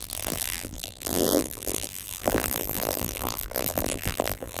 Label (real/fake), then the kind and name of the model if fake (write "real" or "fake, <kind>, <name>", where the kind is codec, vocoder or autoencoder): fake, vocoder, BigVGAN v2